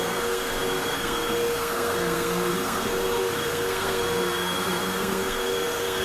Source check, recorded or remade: remade